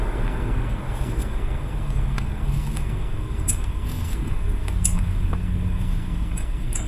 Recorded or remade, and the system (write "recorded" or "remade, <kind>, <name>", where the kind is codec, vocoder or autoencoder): remade, codec, SNAC